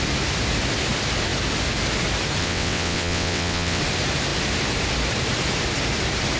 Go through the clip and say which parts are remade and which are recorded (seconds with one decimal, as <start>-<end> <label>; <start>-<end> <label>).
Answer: 0.0-2.4 recorded; 2.4-3.8 remade; 3.8-6.4 recorded